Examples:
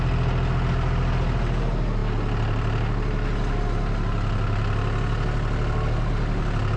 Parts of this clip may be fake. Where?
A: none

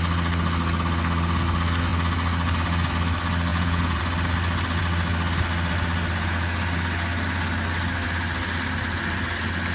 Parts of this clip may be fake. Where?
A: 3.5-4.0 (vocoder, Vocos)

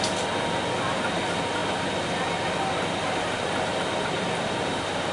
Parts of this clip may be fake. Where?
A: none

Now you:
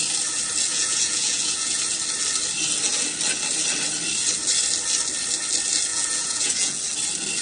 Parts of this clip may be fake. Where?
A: 0.7-1.8 (vocoder, Vocos); 5.9-6.8

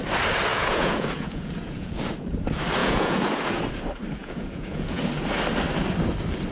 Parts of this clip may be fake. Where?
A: 0.5-2.0 (vocoder, Vocos); 2.8-3.6; 4.2-5.0

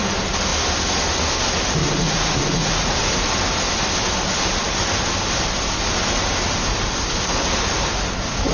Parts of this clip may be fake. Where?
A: 1.8-3.1 (vocoder, Vocos)

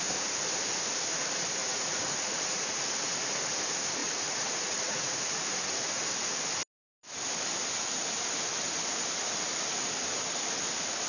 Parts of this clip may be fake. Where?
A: 1.6-3.3 (vocoder, Vocos); 4.0-5.4

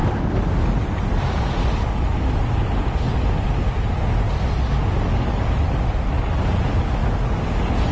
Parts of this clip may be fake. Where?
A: none